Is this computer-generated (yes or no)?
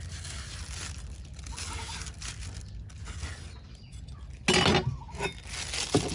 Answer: no